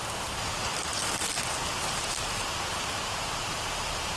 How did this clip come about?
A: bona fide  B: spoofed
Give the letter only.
A